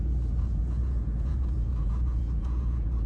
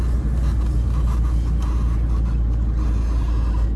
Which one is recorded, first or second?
second